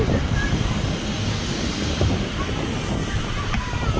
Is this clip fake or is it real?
real